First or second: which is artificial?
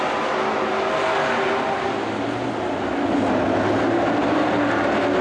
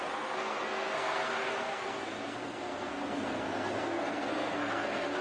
second